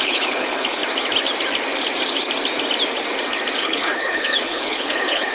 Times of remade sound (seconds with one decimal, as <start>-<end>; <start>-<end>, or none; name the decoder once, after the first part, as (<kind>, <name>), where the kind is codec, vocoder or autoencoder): 0.0-0.8 (codec, HILCodec); 3.6-5.3